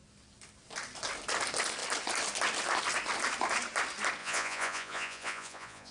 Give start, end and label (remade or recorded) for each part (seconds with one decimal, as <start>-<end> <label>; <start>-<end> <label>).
0.0-4.2 recorded; 4.2-5.9 remade